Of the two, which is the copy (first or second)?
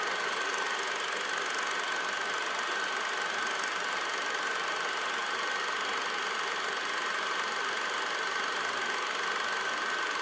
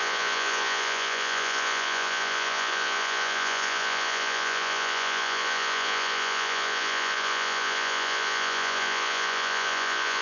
second